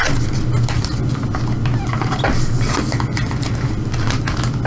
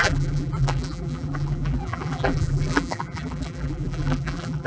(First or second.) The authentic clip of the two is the first